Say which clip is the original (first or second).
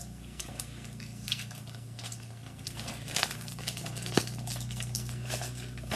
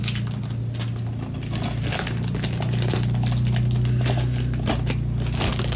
second